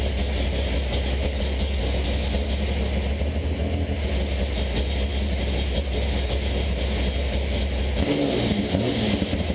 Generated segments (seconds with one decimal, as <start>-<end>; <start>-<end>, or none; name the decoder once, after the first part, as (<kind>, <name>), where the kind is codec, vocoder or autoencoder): 1.2-1.8 (codec, DAC)